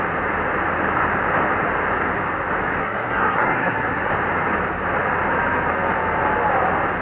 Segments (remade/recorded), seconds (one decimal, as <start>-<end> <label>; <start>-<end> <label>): 0.0-2.8 recorded; 2.8-4.1 remade; 4.1-7.0 recorded